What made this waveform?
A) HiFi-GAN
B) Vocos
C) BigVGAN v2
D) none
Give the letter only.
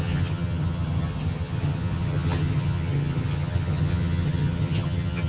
A